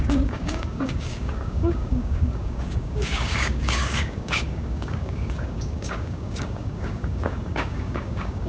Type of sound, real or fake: fake